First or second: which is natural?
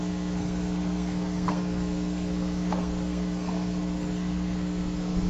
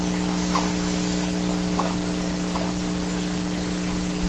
second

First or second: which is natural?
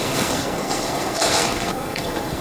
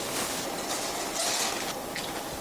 second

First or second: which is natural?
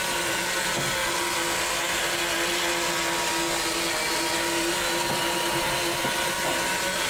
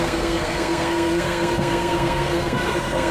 first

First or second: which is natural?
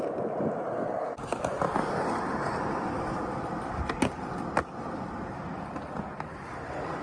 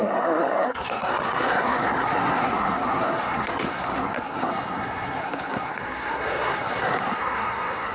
first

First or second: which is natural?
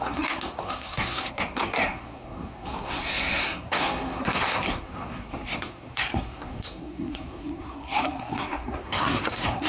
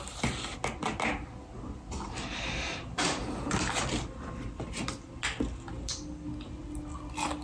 second